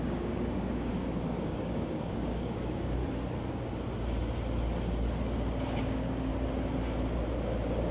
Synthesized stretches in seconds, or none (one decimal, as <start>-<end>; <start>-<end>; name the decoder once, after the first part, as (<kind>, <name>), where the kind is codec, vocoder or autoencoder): 0.0-3.0 (codec, DAC); 5.8-6.3